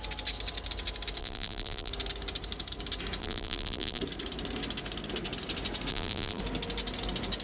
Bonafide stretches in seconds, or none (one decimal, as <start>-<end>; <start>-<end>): 0.0-1.2; 1.9-3.2; 4.0-5.9; 6.4-7.4